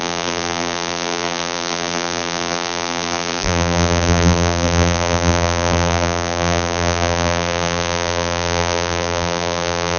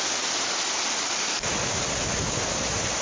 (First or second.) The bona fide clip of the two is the second